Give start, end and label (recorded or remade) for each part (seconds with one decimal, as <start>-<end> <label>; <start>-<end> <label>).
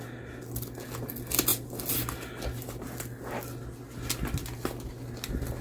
0.0-5.6 recorded